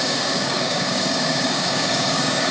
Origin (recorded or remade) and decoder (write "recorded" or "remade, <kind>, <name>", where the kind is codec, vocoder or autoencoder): remade, codec, DAC